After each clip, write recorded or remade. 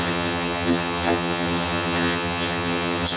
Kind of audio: remade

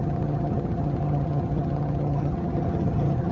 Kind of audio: remade